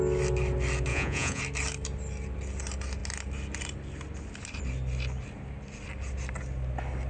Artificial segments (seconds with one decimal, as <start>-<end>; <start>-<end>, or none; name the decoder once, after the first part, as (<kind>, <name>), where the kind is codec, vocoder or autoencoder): 0.9-1.4 (vocoder, Vocos)